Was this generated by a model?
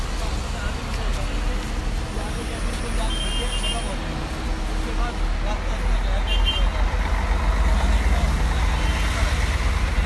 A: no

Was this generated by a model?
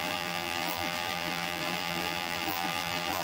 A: yes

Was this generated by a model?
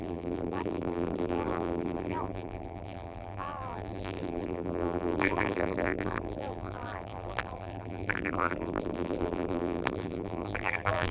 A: yes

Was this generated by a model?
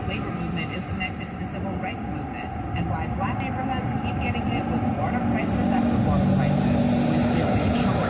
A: no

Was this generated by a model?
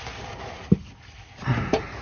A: yes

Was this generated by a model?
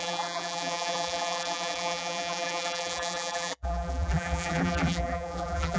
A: yes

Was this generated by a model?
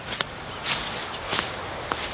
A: no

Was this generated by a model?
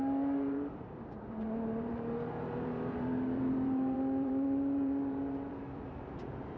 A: yes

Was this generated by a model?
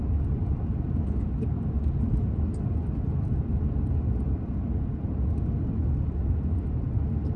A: no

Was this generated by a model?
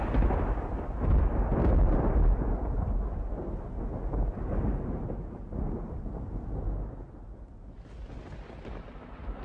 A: no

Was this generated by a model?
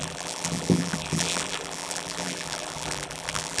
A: yes